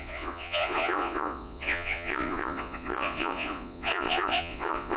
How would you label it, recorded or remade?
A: remade